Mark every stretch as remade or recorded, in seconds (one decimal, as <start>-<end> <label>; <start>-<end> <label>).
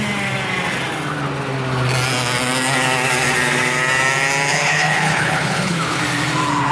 0.0-4.5 recorded; 4.5-6.0 remade; 6.0-6.7 recorded